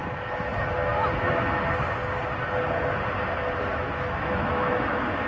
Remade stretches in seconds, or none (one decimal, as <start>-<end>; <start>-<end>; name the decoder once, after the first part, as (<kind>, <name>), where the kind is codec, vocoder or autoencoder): 3.7-5.3 (autoencoder, DAC-VAE)